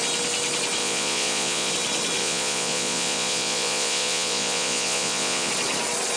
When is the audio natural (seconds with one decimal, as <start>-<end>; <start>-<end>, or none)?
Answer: 0.0-0.8; 1.7-2.2; 5.5-6.2